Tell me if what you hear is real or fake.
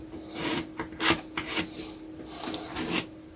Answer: real